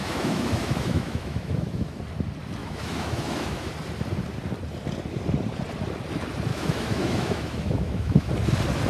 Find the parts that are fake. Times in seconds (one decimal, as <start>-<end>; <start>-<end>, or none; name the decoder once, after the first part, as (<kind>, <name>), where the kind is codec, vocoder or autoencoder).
0.0-2.0 (autoencoder, DAC-VAE); 2.6-3.7; 6.5-8.3